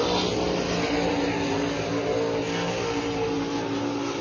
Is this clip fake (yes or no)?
no